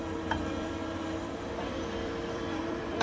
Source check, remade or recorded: remade